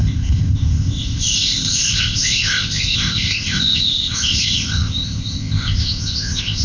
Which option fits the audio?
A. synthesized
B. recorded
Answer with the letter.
A